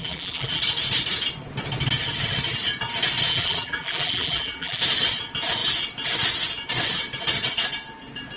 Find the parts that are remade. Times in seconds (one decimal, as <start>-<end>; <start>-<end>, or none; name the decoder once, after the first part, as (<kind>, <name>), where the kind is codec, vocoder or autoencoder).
0.0-0.6 (vocoder, BigVGAN v2); 3.3-4.8